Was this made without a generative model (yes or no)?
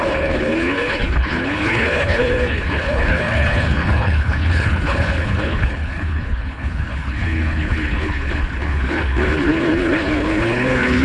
no